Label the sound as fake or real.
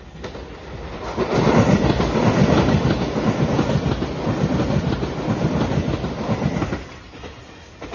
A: real